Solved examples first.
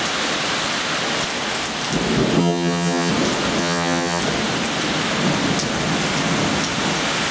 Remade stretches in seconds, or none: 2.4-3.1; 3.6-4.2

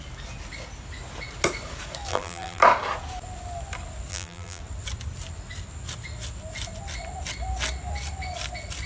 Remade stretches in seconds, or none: 2.1-2.6; 4.1-4.6

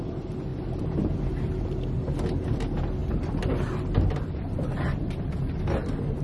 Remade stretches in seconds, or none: none

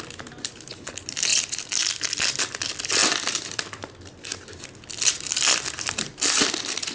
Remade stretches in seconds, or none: none

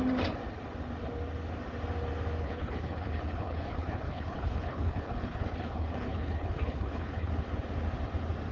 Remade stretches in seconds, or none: 2.4-7.3

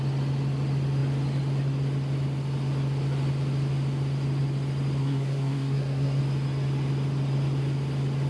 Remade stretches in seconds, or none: 5.0-6.2